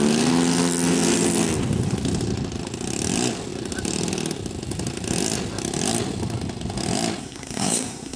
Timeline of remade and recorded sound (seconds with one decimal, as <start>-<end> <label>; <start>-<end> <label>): 0.0-7.2 recorded; 7.2-8.2 remade